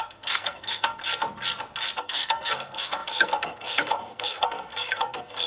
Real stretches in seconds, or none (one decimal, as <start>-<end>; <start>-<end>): 1.0-2.0